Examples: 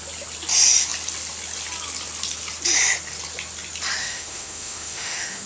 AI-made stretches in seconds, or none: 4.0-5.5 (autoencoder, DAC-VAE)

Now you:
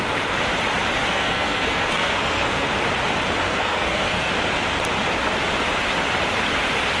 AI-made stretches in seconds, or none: 1.0-2.7 (codec, SNAC); 3.5-4.3